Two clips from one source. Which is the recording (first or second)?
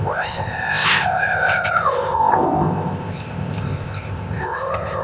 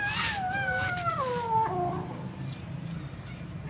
second